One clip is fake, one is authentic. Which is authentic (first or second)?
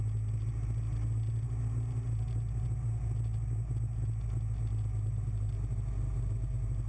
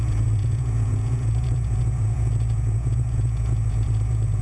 first